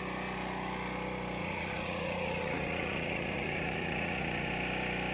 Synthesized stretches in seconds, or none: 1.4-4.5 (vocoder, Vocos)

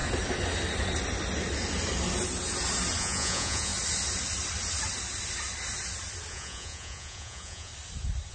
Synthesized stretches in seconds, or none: 3.0-3.7 (vocoder, Vocos); 6.3-7.7

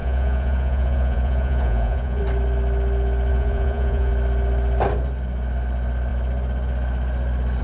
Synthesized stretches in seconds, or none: 0.0-2.2 (vocoder, Vocos); 3.3-4.1

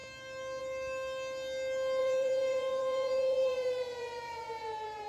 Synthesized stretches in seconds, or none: 2.0-5.1 (vocoder, Vocos)